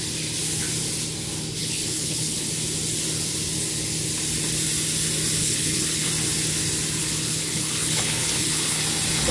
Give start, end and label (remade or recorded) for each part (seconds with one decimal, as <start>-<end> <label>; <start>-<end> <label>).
0.0-1.6 recorded; 1.6-2.5 remade; 2.5-5.4 recorded; 5.4-6.1 remade; 6.1-7.0 recorded; 7.0-8.8 remade; 8.8-9.3 recorded